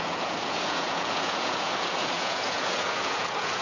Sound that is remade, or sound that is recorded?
remade